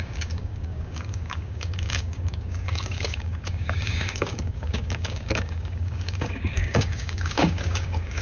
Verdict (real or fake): fake